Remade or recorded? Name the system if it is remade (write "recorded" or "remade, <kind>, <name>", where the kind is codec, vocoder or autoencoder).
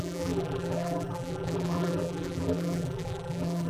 remade, vocoder, BigVGAN v2